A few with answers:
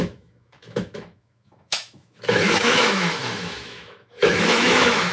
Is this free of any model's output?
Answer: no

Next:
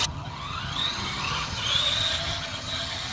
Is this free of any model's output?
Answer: no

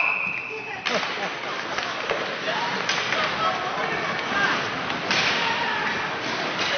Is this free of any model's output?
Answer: yes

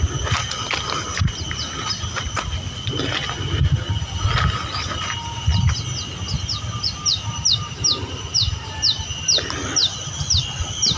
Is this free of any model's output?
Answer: yes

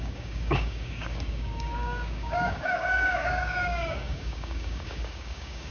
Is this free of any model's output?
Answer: no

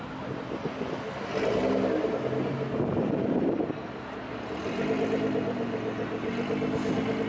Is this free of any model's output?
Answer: yes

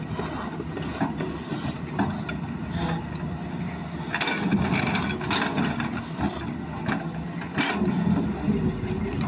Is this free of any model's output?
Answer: yes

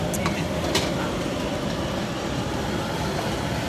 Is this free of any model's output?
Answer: yes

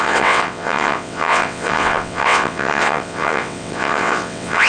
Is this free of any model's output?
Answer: no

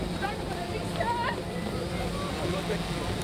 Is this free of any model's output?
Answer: yes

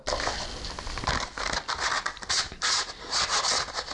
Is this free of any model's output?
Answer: yes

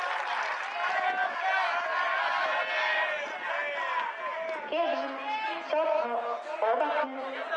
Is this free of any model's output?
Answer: yes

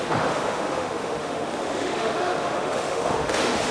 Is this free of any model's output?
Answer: no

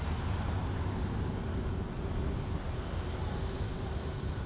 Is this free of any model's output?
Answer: yes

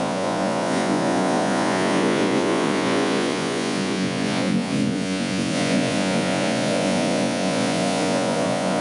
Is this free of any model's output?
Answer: no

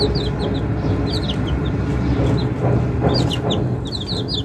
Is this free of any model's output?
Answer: yes